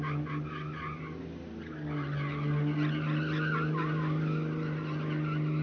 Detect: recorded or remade recorded